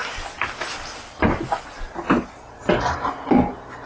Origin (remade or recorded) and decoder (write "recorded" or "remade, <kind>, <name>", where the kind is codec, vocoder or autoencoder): recorded